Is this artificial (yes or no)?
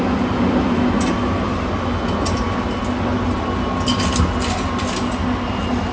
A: no